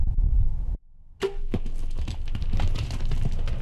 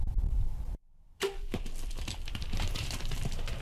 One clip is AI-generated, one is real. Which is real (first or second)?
first